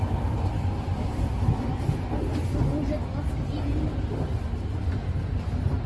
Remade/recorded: recorded